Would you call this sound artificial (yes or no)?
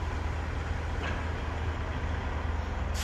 no